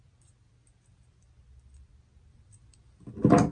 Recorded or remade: recorded